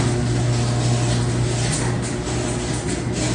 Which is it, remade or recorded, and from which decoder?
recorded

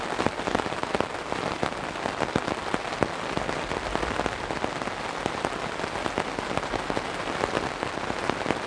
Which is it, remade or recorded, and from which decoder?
recorded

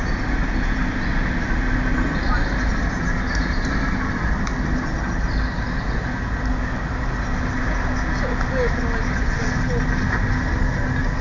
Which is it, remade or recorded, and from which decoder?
recorded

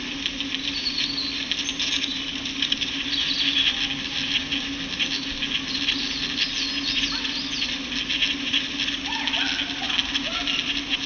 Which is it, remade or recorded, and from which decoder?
recorded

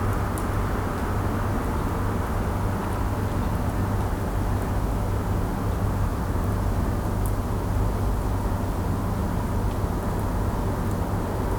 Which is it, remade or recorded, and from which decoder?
recorded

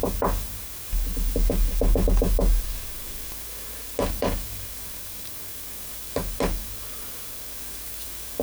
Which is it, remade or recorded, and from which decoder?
remade, codec, DAC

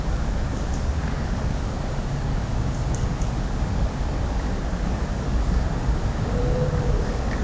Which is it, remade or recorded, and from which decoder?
remade, codec, DAC